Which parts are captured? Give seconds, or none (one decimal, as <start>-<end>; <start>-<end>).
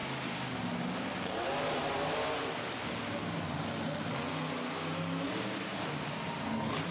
0.0-6.9